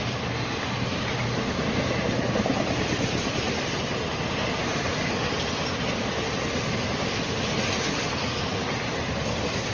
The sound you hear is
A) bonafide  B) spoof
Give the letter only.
A